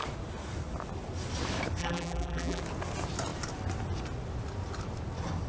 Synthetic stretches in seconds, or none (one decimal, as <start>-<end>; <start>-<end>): 1.8-2.6